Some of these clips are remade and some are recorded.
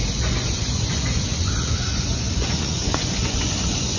remade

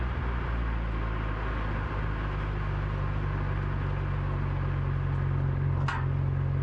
recorded